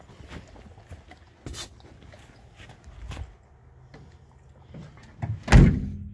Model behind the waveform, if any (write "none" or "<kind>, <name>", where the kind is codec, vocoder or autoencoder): none